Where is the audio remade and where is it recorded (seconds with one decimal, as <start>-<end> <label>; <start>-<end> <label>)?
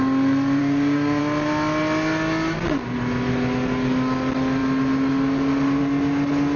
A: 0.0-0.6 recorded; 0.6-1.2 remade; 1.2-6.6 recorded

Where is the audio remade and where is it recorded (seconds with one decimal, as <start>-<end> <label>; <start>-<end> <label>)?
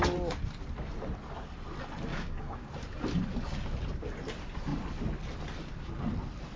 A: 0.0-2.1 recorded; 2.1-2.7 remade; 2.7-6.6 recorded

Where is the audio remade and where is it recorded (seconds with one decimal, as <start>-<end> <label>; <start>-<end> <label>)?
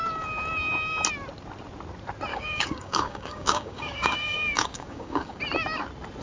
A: 0.0-2.3 recorded; 2.3-5.4 remade; 5.4-6.2 recorded